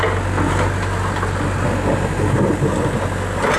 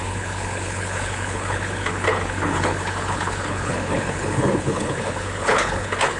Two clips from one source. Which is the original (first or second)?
first